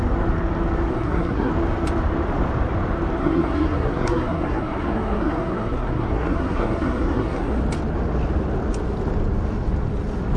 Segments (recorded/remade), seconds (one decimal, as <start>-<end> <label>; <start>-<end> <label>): 0.0-0.9 recorded; 0.9-1.5 remade; 1.5-3.2 recorded; 3.2-7.6 remade; 7.6-10.4 recorded